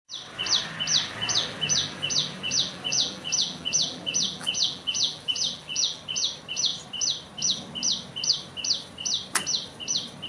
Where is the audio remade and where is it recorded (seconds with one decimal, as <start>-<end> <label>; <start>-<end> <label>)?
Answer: 0.0-0.9 recorded; 0.9-6.0 remade; 6.0-10.3 recorded